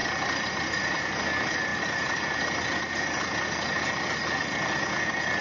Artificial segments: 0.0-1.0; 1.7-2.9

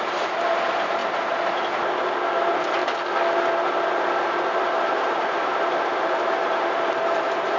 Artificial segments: 0.0-1.0; 1.5-2.8; 4.5-7.6

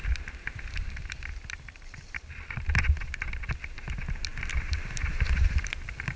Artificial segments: 0.0-2.2

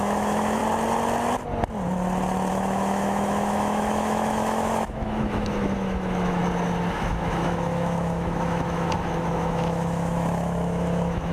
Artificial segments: 0.0-0.6; 2.5-6.4; 6.9-11.3

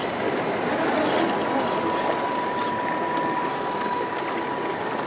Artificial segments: 3.5-4.1

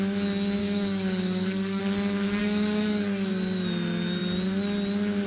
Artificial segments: 0.6-1.8; 2.4-3.3

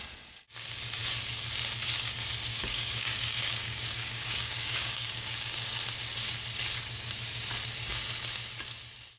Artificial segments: 2.5-5.8

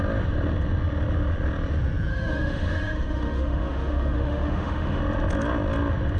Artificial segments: 2.1-5.0